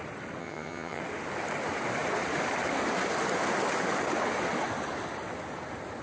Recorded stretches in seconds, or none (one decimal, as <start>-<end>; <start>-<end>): 0.0-0.4; 1.0-6.0